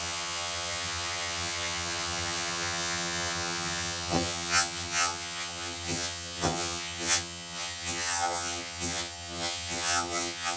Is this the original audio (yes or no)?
no